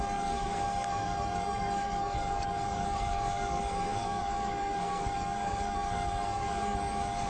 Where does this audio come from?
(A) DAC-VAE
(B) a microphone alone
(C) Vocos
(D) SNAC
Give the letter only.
D